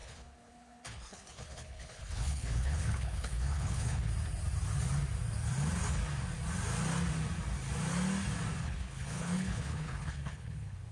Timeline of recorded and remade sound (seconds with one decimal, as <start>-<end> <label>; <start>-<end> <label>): 0.0-4.1 remade; 4.1-8.6 recorded; 8.6-10.9 remade